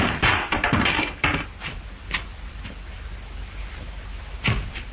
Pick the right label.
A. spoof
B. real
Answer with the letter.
B